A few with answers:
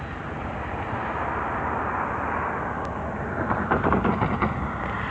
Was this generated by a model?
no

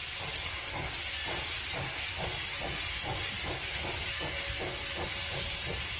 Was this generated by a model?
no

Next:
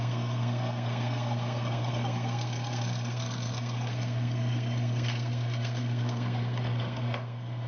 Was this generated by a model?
yes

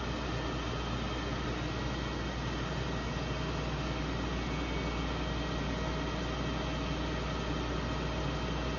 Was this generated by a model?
no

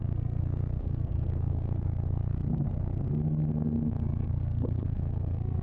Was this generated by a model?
yes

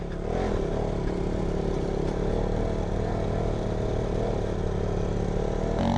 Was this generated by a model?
no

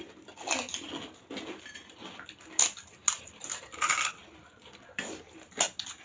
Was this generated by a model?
no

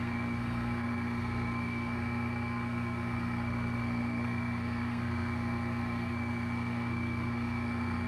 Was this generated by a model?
yes